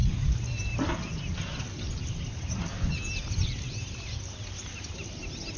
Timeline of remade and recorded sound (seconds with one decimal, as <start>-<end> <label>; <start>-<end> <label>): 0.0-5.6 recorded